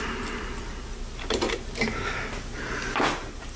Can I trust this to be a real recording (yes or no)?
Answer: yes